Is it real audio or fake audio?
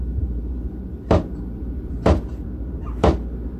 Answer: fake